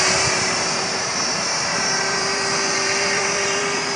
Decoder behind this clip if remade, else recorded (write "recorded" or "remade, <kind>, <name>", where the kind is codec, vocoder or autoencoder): remade, vocoder, BigVGAN v2